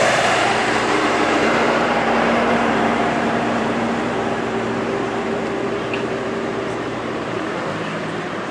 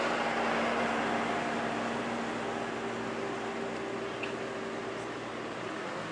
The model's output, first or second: first